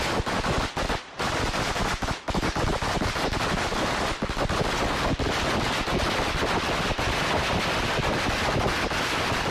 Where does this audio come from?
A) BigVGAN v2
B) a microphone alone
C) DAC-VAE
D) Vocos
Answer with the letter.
B